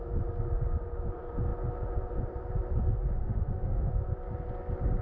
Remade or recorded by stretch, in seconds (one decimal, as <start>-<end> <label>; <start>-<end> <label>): 0.0-3.2 recorded; 3.2-3.9 remade; 3.9-5.0 recorded

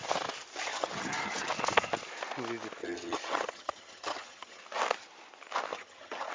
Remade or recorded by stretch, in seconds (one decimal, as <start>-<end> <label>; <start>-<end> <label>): 0.0-0.7 recorded; 0.7-1.5 remade; 1.5-2.8 recorded; 2.8-4.6 remade; 4.6-5.7 recorded; 5.7-6.3 remade

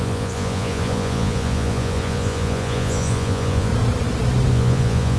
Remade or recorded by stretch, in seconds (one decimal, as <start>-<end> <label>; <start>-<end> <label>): 0.0-3.7 remade; 3.7-4.5 recorded; 4.5-5.2 remade

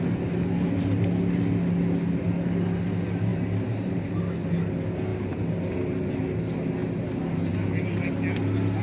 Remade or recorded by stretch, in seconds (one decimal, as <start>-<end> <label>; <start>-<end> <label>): 0.0-3.3 recorded; 3.3-4.1 remade; 4.1-5.1 recorded; 5.1-6.1 remade; 6.1-8.8 recorded

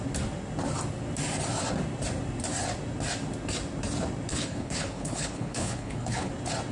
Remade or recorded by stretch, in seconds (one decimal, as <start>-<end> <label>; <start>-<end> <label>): 0.0-4.3 recorded; 4.3-6.3 remade; 6.3-6.7 recorded

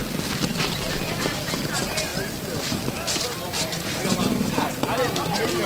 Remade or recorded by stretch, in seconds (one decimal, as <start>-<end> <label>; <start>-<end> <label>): 0.0-0.5 recorded; 0.5-1.1 remade; 1.1-5.7 recorded